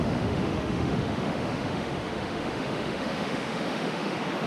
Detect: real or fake fake